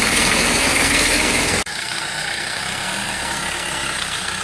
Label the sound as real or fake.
fake